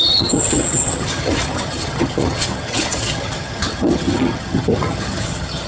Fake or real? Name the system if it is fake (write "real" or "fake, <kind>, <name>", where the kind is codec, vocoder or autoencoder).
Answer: fake, vocoder, HiFi-GAN